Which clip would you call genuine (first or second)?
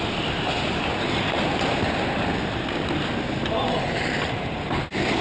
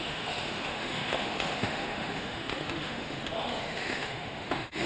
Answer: first